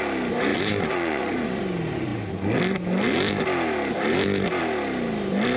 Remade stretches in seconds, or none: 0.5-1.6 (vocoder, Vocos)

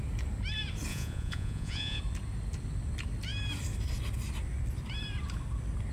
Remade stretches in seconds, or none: 0.9-2.0 (vocoder, Vocos)

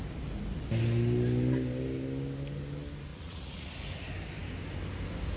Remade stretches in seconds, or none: 3.1-3.7 (vocoder, Vocos)

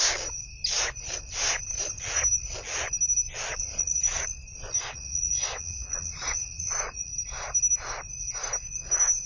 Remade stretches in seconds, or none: 3.5-4.3 (vocoder, Vocos); 4.8-7.1

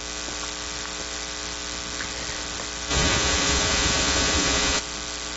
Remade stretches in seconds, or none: 2.9-4.8 (vocoder, Vocos)

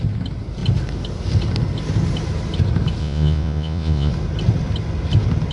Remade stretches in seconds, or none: 3.0-4.1 (vocoder, Vocos)

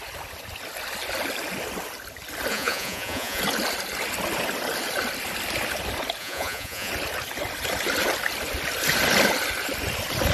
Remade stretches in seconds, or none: 2.5-3.4 (vocoder, Vocos); 6.2-6.9